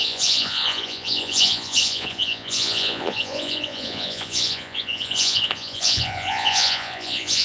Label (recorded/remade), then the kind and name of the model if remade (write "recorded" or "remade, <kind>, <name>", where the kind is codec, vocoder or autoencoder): remade, vocoder, Vocos